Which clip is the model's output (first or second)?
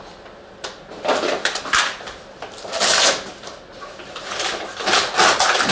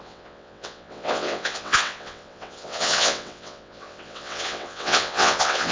second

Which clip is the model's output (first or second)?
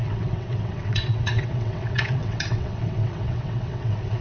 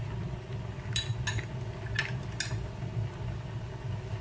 first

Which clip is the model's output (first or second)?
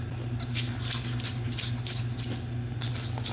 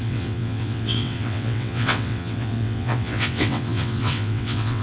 second